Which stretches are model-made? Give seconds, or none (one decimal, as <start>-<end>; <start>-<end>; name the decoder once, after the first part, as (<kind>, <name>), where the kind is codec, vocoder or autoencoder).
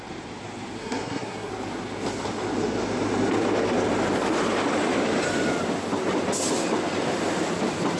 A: 0.8-1.5 (codec, SNAC)